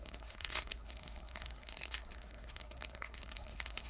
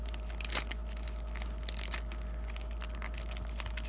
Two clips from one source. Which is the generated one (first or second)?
first